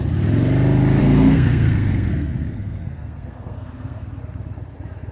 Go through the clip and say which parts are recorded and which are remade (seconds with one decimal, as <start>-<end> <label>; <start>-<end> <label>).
0.0-1.0 recorded; 1.0-4.1 remade; 4.1-5.1 recorded